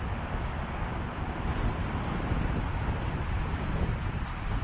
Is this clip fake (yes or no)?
yes